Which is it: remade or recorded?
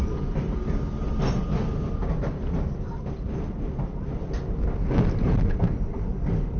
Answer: recorded